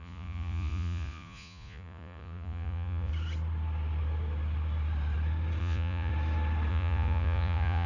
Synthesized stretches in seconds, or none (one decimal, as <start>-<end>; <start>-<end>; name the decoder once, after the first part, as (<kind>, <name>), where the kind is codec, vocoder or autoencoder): 0.0-3.1 (vocoder, Vocos); 5.6-6.1; 6.7-7.9